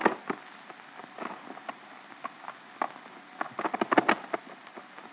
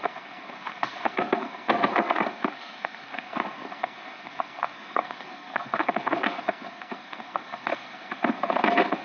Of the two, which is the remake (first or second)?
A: second